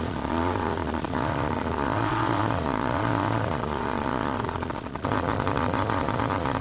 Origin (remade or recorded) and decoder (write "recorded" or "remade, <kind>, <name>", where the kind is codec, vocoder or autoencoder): remade, vocoder, Vocos